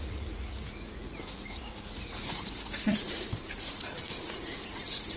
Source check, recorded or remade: remade